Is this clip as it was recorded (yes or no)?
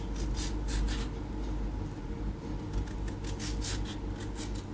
yes